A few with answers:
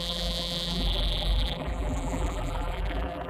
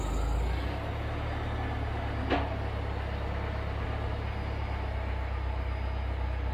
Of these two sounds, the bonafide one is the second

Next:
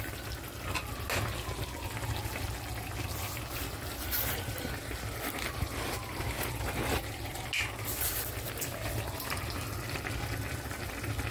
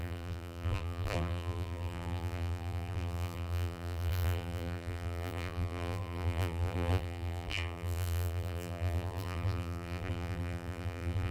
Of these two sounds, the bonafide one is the first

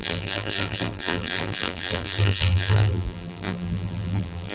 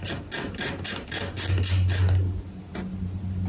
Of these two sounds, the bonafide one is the second